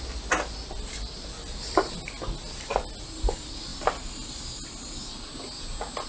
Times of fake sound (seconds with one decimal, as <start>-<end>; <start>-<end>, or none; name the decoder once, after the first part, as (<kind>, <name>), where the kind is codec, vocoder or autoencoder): none